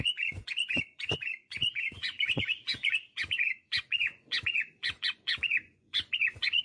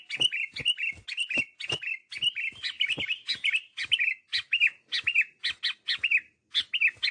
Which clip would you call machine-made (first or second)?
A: first